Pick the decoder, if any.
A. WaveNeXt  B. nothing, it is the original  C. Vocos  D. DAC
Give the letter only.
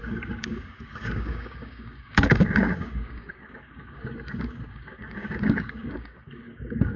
D